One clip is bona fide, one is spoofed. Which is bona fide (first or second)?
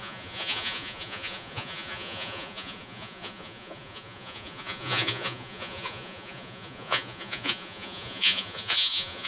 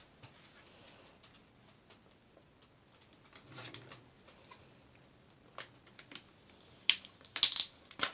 second